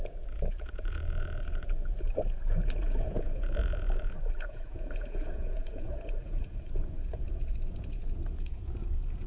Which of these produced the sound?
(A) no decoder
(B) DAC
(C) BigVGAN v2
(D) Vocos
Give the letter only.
D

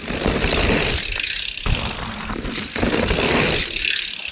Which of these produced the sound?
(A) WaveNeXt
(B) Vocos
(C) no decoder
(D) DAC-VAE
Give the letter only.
C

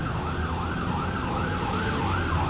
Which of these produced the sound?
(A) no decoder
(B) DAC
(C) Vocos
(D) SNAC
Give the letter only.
A